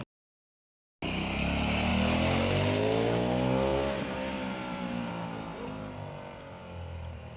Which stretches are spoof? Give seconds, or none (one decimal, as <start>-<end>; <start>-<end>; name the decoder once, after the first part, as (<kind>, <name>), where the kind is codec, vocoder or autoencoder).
3.7-5.1 (vocoder, BigVGAN v2)